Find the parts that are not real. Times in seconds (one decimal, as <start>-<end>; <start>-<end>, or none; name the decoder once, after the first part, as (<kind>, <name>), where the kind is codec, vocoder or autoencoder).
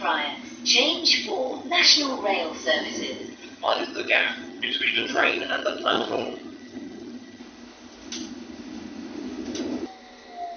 0.9-2.2 (vocoder, HiFi-GAN); 3.2-7.4